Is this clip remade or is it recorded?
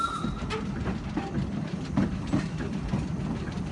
recorded